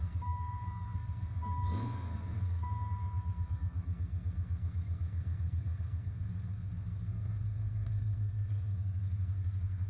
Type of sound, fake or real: fake